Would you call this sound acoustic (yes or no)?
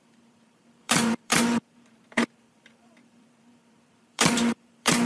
no